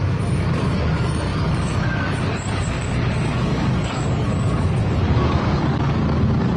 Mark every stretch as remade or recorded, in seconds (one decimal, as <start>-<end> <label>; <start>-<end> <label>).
0.0-6.6 remade